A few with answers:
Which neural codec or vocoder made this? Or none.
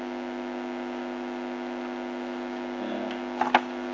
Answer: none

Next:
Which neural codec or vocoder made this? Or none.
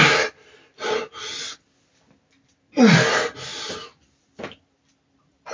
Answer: none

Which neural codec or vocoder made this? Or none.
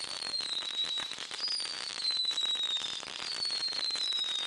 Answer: vocoder, BigVGAN v2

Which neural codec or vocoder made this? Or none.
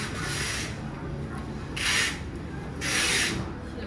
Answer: none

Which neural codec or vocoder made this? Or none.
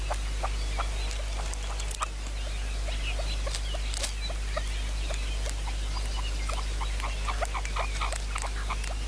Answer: none